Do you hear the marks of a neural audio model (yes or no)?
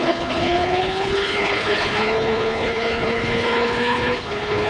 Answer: yes